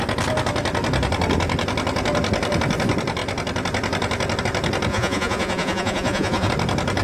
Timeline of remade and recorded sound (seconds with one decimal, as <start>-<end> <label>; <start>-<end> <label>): 0.0-4.9 recorded; 4.9-6.5 remade; 6.5-7.0 recorded